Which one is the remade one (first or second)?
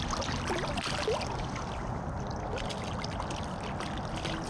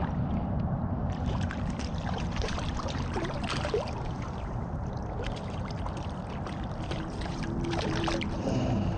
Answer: second